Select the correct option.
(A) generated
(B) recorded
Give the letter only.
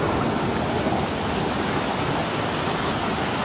B